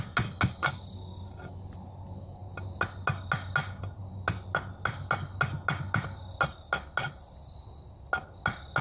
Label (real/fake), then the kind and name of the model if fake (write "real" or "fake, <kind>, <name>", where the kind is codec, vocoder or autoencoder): real